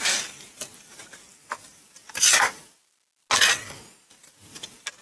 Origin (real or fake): real